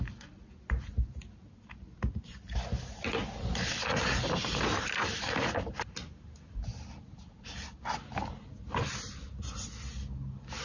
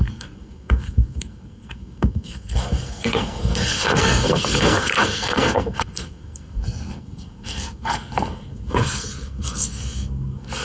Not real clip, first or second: second